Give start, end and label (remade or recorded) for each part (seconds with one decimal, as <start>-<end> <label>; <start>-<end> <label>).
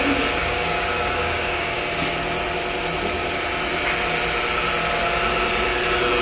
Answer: 0.0-0.4 recorded; 0.4-1.8 remade; 1.8-6.2 recorded